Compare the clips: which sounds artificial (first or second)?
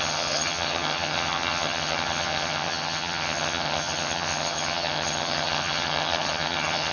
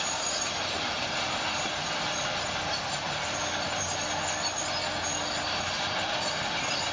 first